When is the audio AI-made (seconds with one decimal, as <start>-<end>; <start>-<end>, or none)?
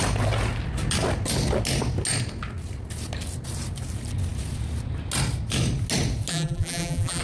6.3-7.2